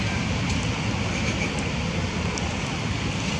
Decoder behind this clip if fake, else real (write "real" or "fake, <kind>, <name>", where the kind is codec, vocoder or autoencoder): real